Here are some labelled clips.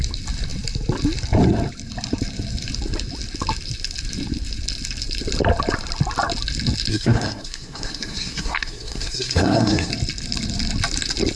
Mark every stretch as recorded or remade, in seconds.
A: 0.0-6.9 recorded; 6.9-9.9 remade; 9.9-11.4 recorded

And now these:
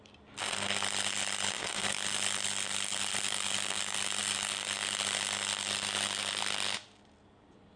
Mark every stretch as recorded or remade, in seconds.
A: 0.0-7.8 recorded

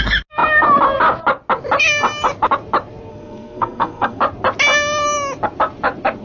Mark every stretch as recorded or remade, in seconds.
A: 0.0-3.1 recorded; 3.1-4.2 remade; 4.2-6.2 recorded

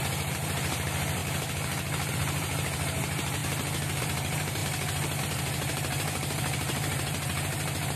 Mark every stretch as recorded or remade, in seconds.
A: 0.0-1.2 remade; 1.2-2.1 recorded; 2.1-3.4 remade; 3.4-4.0 recorded; 4.0-4.6 remade; 4.6-5.2 recorded; 5.2-8.0 remade

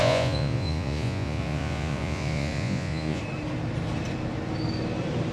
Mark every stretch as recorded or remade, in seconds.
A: 0.0-3.2 remade; 3.2-5.3 recorded

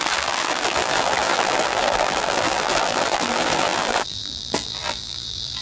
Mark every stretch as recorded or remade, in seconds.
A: 0.0-5.6 remade